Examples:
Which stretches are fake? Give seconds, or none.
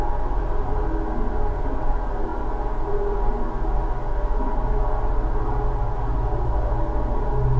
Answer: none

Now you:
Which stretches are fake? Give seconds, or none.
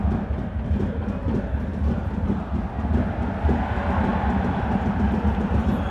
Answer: 1.7-2.7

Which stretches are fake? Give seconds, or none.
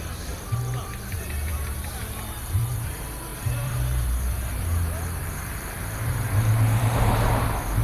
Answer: 0.0-7.8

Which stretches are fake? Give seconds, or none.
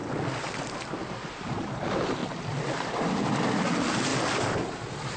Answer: 0.9-2.2; 3.5-4.1